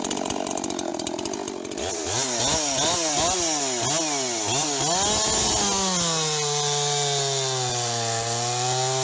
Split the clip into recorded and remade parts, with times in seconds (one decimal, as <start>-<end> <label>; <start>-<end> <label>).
0.0-9.0 recorded